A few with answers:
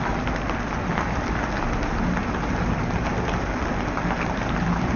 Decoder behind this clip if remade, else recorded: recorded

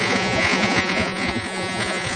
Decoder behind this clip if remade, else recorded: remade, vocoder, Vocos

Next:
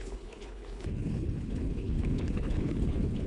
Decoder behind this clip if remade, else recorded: remade, codec, HILCodec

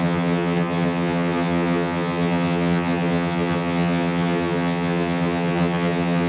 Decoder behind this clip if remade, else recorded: remade, vocoder, HiFi-GAN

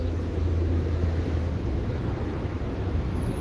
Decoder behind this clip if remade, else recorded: remade, autoencoder, DAC-VAE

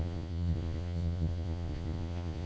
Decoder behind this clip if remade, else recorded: remade, vocoder, Vocos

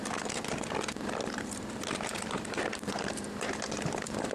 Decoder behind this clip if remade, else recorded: remade, vocoder, BigVGAN v2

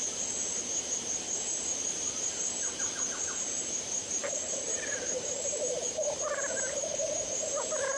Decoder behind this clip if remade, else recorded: remade, vocoder, BigVGAN v2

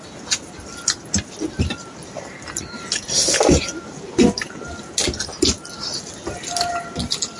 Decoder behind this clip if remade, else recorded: recorded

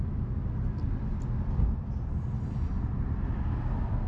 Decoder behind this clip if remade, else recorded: recorded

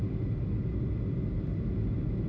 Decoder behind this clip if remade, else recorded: recorded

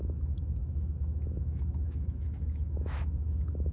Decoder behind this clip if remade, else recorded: remade, autoencoder, DAC-VAE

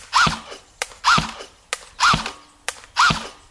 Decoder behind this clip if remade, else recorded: recorded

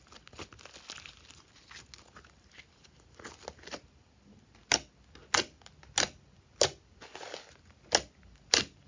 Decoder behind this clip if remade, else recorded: recorded